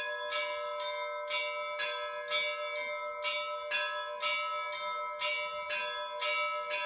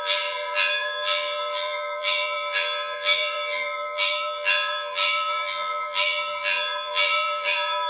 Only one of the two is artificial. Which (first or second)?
second